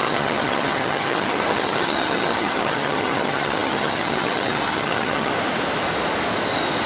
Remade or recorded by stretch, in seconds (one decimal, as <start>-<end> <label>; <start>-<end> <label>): 0.0-5.3 remade; 5.3-6.9 recorded